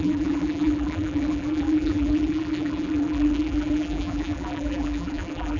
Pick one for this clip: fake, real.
fake